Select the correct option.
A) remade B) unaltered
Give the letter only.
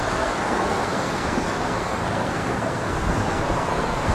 A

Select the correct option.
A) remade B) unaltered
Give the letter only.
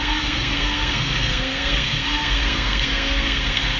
A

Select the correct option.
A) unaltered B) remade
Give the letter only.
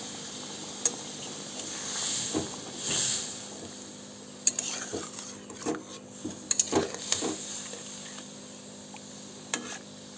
A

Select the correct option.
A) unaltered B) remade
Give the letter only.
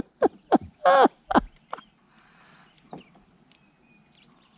A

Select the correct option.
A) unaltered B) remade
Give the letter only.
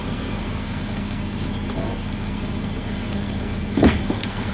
B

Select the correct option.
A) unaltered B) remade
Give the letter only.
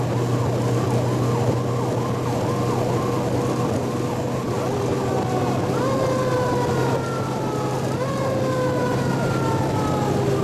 A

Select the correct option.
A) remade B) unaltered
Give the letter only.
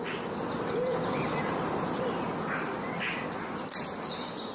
B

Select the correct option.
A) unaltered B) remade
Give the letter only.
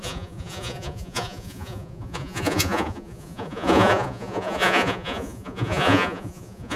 B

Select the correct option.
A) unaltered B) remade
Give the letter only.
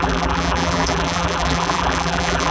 B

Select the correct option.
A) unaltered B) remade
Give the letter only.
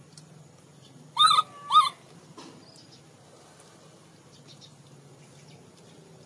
A